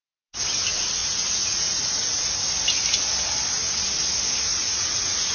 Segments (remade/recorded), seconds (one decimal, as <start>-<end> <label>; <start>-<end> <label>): 0.0-1.0 recorded; 1.0-2.2 remade; 2.2-4.5 recorded; 4.5-5.3 remade